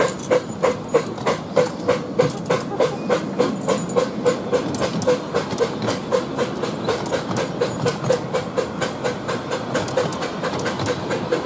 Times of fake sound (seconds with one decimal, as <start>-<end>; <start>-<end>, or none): none